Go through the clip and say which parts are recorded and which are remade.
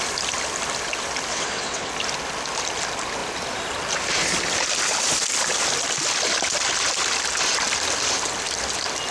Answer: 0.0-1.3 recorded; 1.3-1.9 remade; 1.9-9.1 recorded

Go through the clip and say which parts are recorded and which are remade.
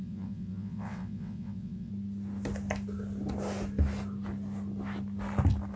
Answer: 0.0-1.9 remade; 1.9-5.8 recorded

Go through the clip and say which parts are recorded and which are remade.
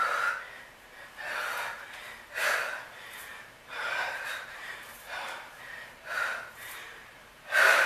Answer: 0.0-3.3 recorded; 3.3-7.9 remade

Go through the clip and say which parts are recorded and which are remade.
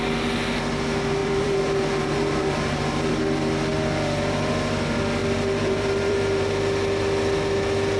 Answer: 0.0-1.2 recorded; 1.2-3.2 remade; 3.2-5.2 recorded; 5.2-6.6 remade; 6.6-8.0 recorded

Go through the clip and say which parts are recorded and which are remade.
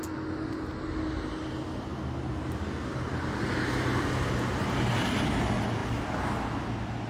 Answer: 0.0-7.1 recorded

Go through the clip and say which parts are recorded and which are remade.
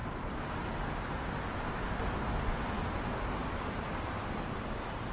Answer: 0.0-3.4 recorded; 3.4-4.2 remade; 4.2-5.1 recorded